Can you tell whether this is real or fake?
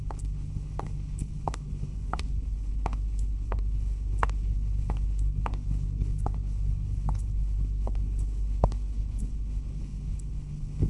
fake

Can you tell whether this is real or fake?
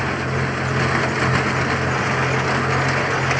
real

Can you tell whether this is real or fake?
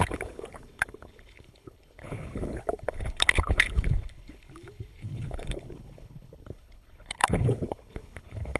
fake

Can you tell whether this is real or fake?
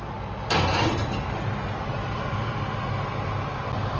real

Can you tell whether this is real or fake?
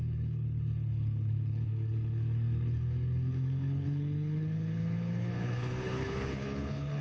fake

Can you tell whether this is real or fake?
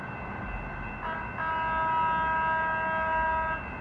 real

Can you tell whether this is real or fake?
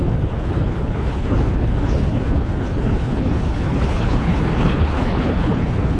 fake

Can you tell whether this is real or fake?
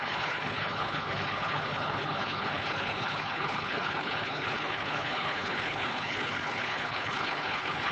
fake